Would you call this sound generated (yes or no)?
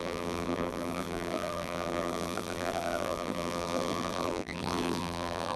yes